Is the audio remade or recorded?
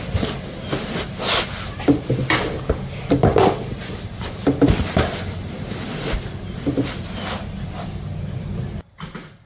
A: remade